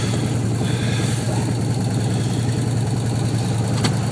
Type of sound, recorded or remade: recorded